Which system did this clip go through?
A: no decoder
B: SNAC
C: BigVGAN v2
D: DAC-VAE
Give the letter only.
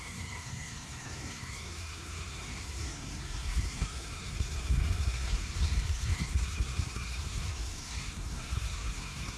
B